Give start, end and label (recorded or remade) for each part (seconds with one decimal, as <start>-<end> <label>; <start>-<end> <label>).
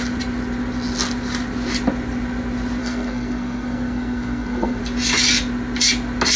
0.0-2.8 recorded; 2.8-4.8 remade; 4.8-6.4 recorded